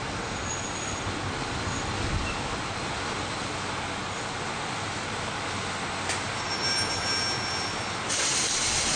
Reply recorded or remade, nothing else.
recorded